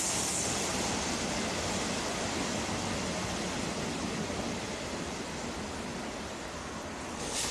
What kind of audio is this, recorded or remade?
recorded